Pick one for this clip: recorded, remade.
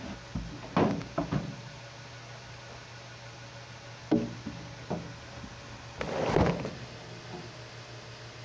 recorded